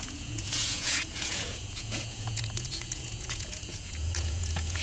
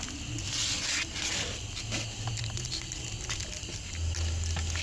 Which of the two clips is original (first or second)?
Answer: second